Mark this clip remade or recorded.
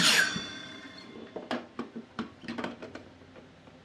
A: remade